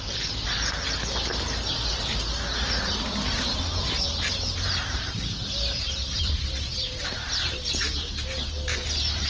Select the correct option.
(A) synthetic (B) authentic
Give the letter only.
A